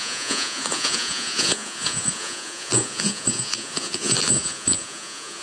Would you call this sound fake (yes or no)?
yes